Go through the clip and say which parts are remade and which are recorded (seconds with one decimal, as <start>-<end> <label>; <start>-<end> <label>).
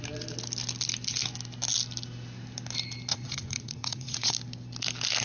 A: 0.0-3.1 recorded; 3.1-4.3 remade; 4.3-5.2 recorded